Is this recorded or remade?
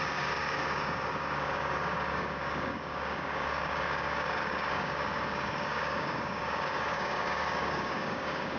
remade